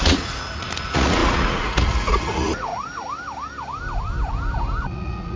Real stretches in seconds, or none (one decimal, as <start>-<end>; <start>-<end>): 2.7-4.9